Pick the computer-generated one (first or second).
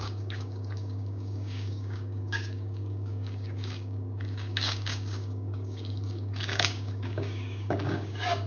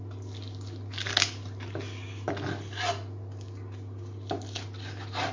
first